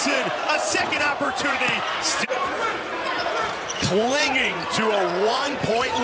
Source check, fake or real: fake